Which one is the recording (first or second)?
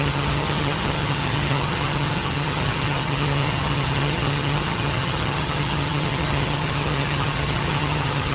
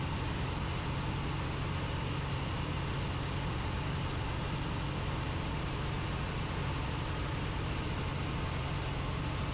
second